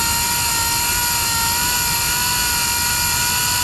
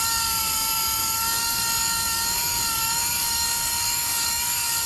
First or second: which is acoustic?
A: first